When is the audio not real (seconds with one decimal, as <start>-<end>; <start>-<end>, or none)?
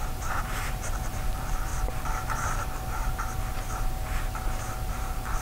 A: 0.0-1.7; 4.9-5.4